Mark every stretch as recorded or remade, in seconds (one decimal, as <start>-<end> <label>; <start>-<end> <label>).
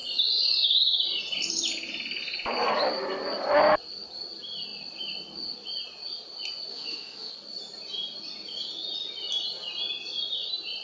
0.0-6.7 recorded; 6.7-7.3 remade; 7.3-10.8 recorded